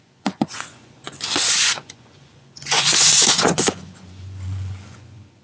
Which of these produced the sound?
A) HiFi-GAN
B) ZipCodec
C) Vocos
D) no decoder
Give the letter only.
C